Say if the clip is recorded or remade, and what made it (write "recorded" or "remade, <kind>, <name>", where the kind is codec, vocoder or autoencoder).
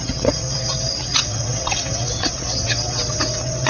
remade, vocoder, WaveNeXt